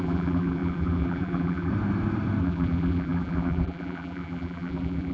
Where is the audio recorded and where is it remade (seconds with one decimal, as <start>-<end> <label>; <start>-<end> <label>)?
0.0-1.7 remade; 1.7-2.4 recorded; 2.4-5.1 remade